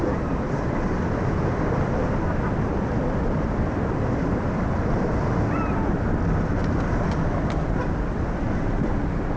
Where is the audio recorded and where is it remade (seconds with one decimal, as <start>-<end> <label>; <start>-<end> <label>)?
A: 0.0-9.4 recorded